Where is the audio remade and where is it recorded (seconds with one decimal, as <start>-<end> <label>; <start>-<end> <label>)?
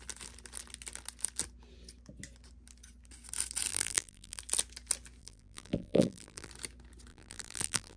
0.0-3.7 recorded; 3.7-4.4 remade; 4.4-5.2 recorded; 5.2-6.5 remade; 6.5-7.1 recorded; 7.1-8.0 remade